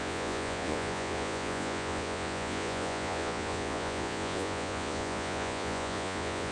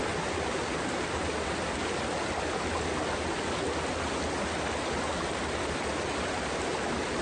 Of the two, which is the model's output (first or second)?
first